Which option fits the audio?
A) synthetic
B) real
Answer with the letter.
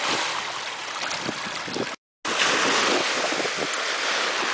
B